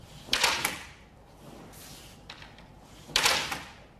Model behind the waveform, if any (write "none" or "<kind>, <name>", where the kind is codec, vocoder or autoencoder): none